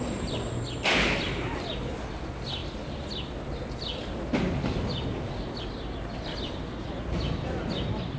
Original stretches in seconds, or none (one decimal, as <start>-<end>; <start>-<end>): 0.0-8.2